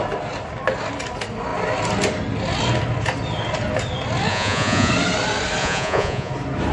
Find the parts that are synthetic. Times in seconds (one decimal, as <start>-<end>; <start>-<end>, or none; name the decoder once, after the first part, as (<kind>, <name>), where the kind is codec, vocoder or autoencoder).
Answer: 4.3-4.9 (vocoder, Vocos); 5.6-6.3